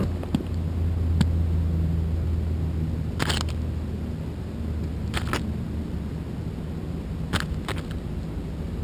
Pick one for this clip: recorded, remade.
recorded